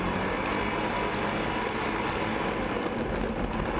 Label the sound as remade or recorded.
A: recorded